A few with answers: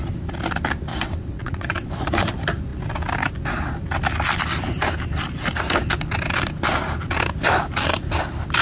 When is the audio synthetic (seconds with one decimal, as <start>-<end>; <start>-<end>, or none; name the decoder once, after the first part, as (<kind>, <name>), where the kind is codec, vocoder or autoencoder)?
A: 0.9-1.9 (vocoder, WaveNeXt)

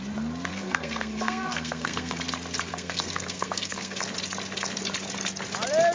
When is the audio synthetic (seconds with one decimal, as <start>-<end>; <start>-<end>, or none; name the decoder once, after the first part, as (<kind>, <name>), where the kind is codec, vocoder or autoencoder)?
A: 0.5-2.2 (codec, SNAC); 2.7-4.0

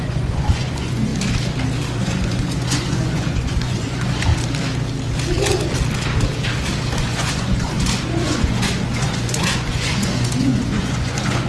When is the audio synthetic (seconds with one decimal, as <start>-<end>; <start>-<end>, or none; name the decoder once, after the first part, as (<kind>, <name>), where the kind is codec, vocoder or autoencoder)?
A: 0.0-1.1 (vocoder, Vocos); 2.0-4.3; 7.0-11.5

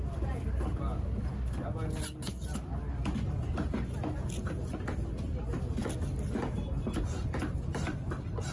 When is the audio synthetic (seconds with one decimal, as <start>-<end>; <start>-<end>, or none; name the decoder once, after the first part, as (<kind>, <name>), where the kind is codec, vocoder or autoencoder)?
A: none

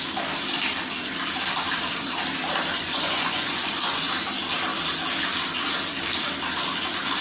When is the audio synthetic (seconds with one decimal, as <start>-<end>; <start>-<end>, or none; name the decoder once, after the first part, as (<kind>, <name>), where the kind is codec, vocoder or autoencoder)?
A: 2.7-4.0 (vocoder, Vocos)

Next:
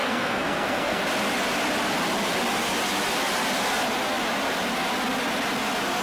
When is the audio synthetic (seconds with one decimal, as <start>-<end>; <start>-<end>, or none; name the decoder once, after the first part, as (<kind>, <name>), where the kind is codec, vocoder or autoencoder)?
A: 0.0-1.0 (codec, SNAC)